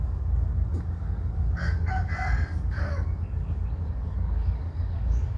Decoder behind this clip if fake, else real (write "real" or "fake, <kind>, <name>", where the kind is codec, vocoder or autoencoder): fake, codec, DAC